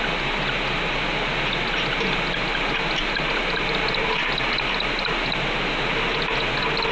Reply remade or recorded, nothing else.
recorded